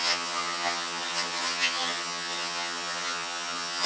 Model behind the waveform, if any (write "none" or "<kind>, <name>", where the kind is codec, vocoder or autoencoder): vocoder, HiFi-GAN